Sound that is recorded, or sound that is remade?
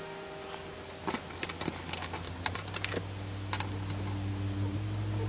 recorded